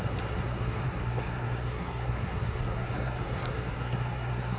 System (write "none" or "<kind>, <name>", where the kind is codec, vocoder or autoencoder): codec, SNAC